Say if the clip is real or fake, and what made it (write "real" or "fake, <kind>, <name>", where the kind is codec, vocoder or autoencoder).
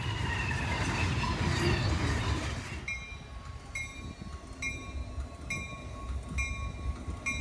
real